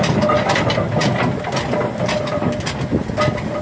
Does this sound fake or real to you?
real